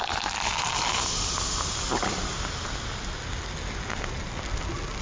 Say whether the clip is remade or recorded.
recorded